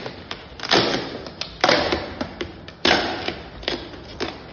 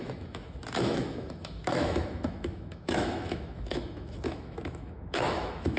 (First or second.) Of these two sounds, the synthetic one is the second